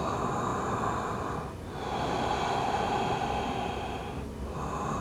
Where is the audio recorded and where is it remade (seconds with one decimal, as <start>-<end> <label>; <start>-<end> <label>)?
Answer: 0.0-5.0 recorded